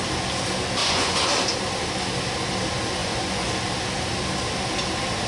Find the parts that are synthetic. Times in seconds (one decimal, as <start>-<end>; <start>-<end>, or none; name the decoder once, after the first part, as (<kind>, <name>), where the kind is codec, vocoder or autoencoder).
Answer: 0.8-1.3 (vocoder, Vocos); 3.0-3.5